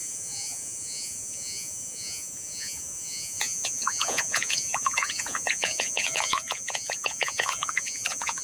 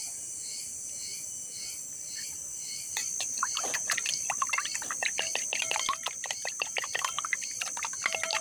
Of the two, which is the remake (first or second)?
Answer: first